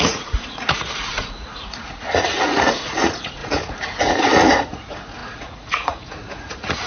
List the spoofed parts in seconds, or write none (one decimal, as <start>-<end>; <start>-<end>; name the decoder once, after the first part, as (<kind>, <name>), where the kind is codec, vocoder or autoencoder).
0.0-6.9 (vocoder, Vocos)